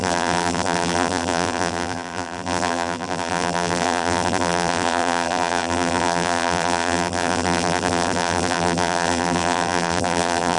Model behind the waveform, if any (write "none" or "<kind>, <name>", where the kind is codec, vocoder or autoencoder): vocoder, BigVGAN v2